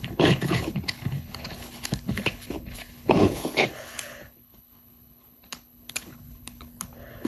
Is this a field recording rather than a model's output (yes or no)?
no